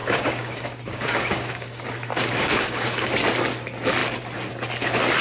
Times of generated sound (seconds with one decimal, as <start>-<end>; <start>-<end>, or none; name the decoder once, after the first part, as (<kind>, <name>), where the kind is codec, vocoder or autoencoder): 0.0-3.1 (codec, DAC)